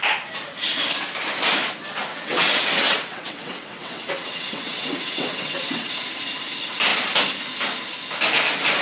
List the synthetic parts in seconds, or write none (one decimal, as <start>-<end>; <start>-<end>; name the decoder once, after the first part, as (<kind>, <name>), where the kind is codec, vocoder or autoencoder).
2.1-5.9 (vocoder, WaveNeXt)